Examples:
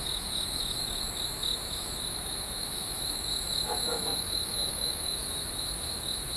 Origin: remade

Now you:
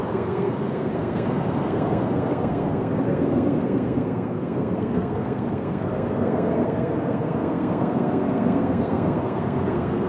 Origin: remade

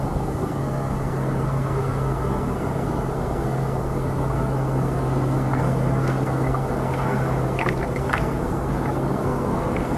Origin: remade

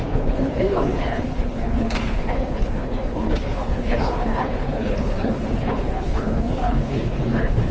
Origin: remade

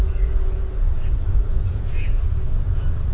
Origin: remade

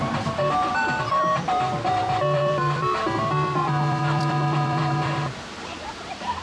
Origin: remade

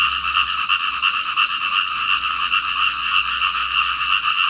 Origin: recorded